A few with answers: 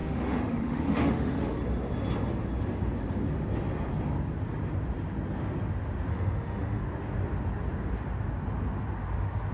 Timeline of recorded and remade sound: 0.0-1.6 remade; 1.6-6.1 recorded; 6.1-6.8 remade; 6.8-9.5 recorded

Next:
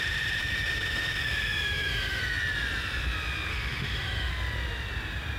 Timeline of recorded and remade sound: 0.0-0.4 recorded; 0.4-2.2 remade; 2.2-3.5 recorded; 3.5-4.3 remade; 4.3-5.4 recorded

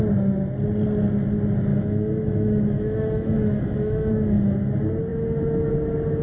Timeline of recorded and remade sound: 0.0-1.7 recorded; 1.7-4.5 remade; 4.5-5.1 recorded; 5.1-5.7 remade; 5.7-6.2 recorded

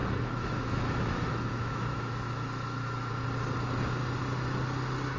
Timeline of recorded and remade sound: 0.0-3.1 remade; 3.1-5.2 recorded

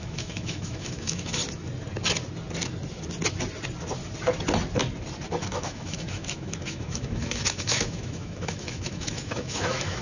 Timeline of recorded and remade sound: 0.0-1.4 remade; 1.4-5.4 recorded; 5.4-10.0 remade

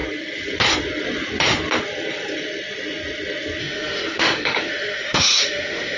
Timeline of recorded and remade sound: 0.0-3.6 recorded; 3.6-6.0 remade

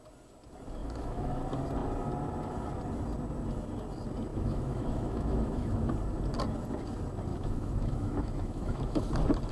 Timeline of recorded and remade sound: 0.0-0.8 recorded; 0.8-1.4 remade; 1.4-4.3 recorded; 4.3-5.9 remade; 5.9-7.3 recorded; 7.3-9.1 remade; 9.1-9.5 recorded